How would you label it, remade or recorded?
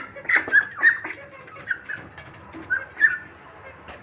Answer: recorded